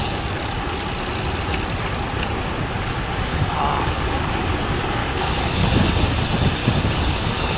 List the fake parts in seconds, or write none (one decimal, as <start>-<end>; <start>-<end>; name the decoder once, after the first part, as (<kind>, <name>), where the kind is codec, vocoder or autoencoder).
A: 3.3-4.3 (codec, DAC); 5.0-5.9; 6.6-7.6